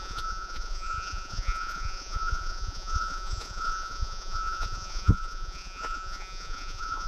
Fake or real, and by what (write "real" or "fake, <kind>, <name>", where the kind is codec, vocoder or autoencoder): fake, vocoder, Vocos